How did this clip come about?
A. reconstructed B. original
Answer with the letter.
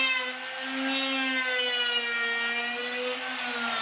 B